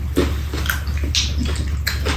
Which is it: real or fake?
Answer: real